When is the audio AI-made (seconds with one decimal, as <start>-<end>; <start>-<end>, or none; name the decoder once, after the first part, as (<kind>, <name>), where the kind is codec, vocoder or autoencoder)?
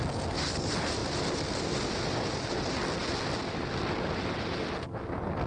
none